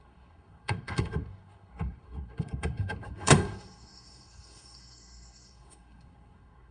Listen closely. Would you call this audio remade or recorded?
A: remade